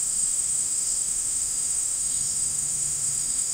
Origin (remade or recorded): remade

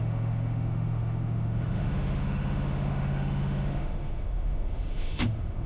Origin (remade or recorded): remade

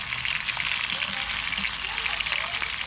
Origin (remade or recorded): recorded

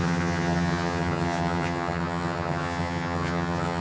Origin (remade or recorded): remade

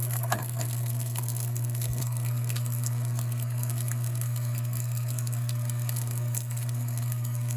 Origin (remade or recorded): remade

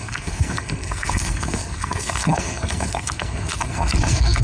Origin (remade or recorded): remade